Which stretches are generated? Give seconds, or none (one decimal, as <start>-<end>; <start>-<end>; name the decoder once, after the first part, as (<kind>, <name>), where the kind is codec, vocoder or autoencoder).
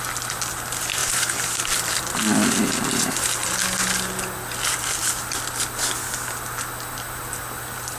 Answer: 1.0-2.0 (vocoder, BigVGAN v2)